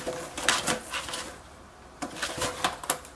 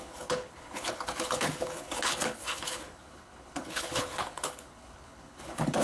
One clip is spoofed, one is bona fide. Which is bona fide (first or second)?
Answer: first